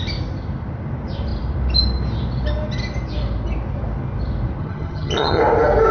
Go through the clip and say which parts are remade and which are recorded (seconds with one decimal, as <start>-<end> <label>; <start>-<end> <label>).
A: 0.0-4.6 recorded; 4.6-5.4 remade; 5.4-5.9 recorded